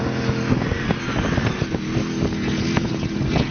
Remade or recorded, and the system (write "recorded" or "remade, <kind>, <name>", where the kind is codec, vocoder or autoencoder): recorded